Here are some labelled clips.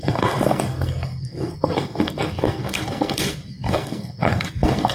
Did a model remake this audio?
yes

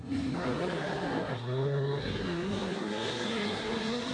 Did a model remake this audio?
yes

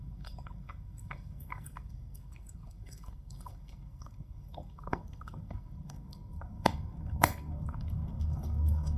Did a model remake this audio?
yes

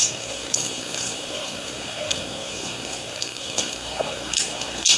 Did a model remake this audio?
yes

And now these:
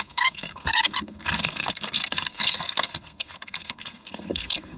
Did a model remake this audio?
yes